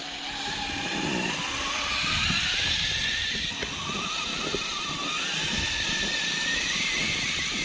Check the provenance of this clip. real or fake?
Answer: real